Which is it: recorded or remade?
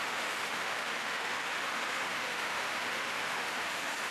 remade